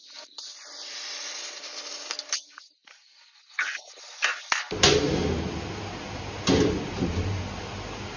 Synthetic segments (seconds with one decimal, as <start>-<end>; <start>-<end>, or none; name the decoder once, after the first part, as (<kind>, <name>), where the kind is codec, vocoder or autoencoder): none